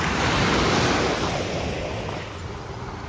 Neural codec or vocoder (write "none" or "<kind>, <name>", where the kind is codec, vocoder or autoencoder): none